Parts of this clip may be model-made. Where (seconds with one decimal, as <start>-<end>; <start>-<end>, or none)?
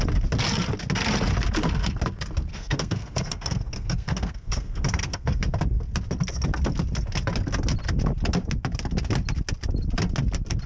2.5-5.4